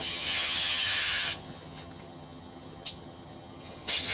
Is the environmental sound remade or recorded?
remade